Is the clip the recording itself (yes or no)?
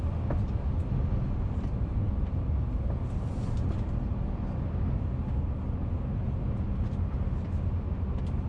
yes